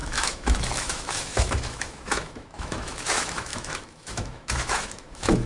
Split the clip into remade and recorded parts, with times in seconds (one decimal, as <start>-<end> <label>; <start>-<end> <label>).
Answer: 0.0-5.5 remade